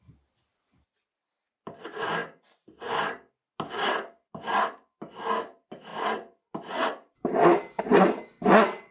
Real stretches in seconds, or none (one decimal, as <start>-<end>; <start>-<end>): 0.0-8.9